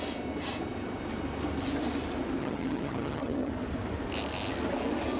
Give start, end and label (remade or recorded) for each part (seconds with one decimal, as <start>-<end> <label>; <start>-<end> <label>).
0.0-2.4 recorded; 2.4-3.5 remade; 3.5-5.2 recorded